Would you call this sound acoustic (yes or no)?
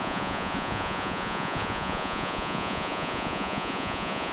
no